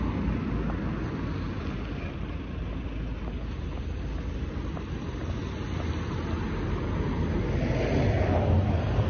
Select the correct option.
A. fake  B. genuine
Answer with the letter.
B